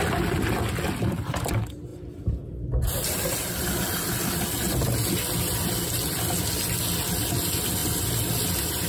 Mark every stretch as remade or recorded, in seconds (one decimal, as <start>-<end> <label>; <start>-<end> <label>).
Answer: 0.0-1.9 recorded; 1.9-3.0 remade; 3.0-7.8 recorded; 7.8-8.3 remade; 8.3-8.9 recorded